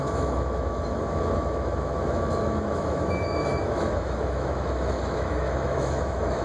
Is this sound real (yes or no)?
no